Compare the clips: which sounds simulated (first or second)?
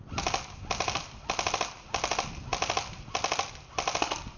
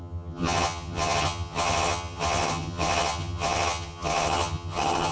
second